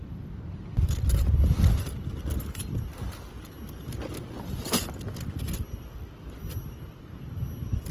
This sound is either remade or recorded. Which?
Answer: recorded